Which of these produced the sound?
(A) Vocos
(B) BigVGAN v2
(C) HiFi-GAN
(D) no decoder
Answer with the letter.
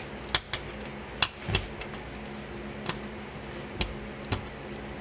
D